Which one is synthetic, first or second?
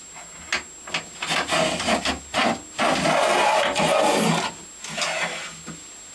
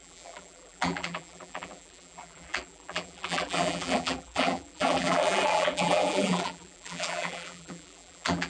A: second